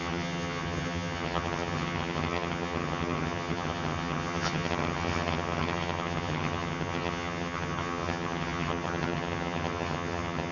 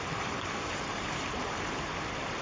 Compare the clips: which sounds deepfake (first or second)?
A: first